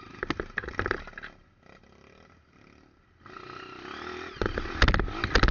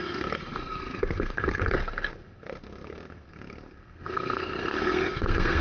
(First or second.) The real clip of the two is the first